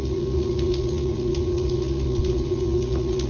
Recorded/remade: remade